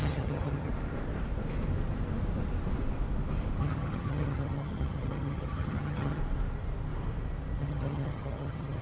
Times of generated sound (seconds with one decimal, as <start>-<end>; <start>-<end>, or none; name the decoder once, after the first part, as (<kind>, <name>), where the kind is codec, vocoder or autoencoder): 0.0-0.7 (vocoder, HiFi-GAN); 3.6-6.2; 7.6-8.8